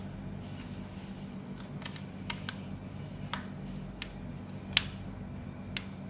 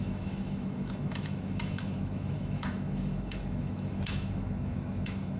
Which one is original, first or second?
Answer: first